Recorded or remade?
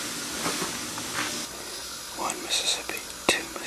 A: recorded